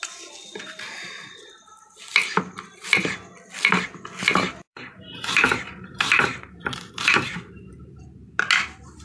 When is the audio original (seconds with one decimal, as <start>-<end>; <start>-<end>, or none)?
0.0-4.7; 8.0-9.0